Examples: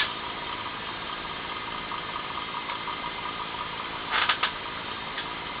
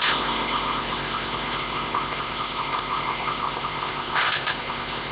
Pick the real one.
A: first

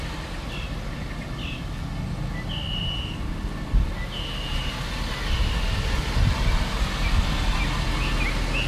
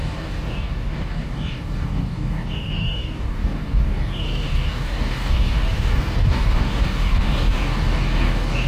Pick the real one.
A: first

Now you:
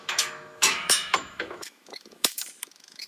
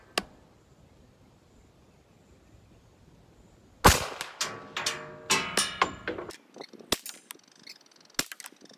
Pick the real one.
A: second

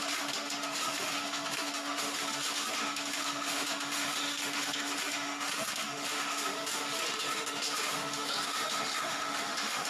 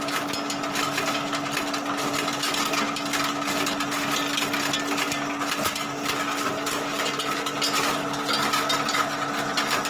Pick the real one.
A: second